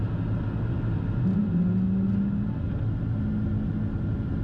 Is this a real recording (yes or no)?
yes